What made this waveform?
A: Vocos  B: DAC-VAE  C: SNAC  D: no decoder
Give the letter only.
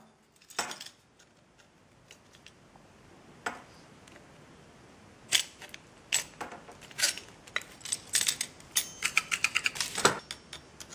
D